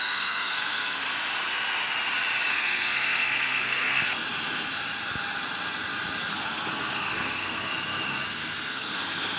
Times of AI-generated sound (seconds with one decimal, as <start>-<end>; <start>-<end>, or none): 0.0-1.0; 2.5-4.1; 6.3-7.7; 8.7-9.4